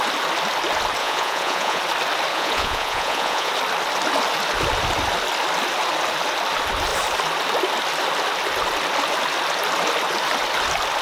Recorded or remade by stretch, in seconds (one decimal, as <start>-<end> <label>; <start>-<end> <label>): 0.0-1.0 recorded; 1.0-1.8 remade; 1.8-2.3 recorded; 2.3-3.5 remade; 3.5-11.0 recorded